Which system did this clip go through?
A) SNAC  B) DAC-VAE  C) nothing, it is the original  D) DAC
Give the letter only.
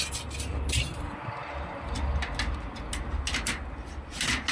C